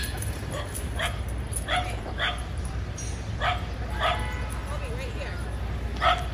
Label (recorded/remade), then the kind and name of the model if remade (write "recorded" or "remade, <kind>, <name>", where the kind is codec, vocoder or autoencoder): recorded